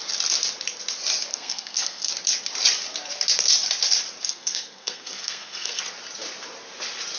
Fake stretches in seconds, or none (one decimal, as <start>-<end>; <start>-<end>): 1.3-2.1; 4.2-5.8